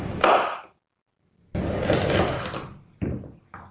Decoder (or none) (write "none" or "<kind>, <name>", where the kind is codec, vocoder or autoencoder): none